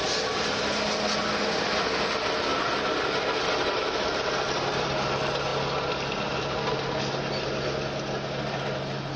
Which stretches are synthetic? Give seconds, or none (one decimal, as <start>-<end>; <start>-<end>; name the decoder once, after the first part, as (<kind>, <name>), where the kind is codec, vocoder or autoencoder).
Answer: none